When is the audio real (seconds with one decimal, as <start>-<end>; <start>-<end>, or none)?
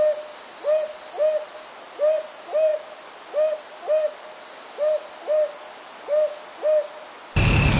0.0-7.8